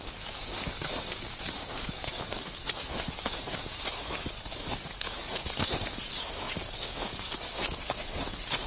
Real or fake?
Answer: fake